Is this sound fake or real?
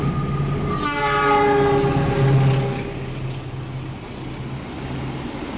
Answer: real